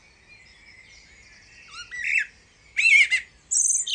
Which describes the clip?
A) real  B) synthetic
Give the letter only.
A